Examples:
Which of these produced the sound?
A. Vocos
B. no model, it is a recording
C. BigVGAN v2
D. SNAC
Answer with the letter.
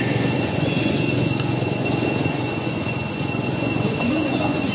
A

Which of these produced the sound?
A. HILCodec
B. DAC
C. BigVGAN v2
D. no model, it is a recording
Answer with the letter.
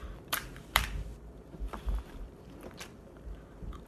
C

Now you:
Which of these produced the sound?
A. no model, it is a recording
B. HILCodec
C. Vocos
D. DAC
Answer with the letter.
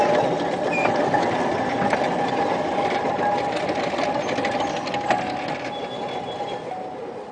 A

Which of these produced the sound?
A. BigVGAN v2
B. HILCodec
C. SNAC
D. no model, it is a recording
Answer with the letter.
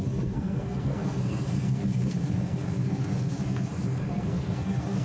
C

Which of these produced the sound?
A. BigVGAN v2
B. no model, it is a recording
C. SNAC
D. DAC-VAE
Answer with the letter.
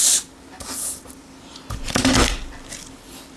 B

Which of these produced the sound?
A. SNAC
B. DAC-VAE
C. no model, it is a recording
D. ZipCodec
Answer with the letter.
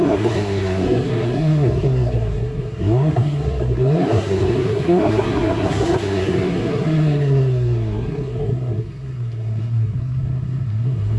A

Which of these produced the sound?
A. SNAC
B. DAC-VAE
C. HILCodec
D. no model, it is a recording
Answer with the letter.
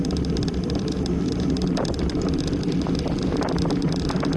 D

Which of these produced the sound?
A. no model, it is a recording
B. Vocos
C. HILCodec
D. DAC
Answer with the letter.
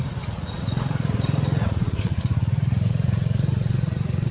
B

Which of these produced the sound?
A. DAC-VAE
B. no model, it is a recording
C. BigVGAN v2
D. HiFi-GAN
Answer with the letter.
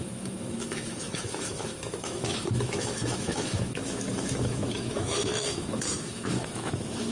A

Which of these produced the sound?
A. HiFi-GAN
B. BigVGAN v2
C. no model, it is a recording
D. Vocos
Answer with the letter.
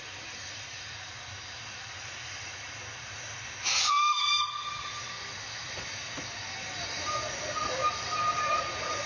C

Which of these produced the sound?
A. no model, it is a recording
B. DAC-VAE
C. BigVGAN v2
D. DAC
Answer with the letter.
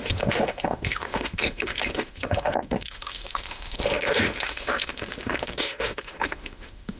B